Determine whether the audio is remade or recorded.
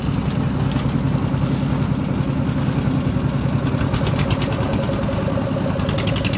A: recorded